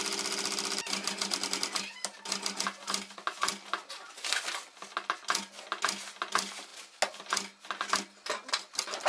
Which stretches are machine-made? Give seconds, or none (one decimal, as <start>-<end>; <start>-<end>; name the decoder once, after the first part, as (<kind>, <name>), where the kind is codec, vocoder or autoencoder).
none